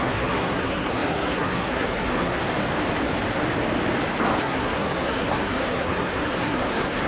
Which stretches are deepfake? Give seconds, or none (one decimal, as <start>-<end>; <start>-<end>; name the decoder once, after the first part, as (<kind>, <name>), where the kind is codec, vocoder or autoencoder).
0.0-2.4 (codec, SNAC); 4.4-7.1